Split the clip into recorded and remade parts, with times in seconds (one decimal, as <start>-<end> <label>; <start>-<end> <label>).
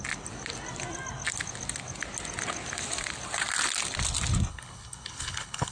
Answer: 0.0-4.5 recorded; 4.5-5.7 remade